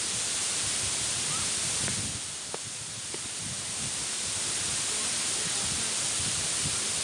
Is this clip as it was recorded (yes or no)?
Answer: yes